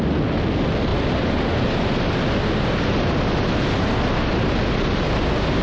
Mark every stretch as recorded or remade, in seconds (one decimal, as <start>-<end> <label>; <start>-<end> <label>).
0.0-5.6 recorded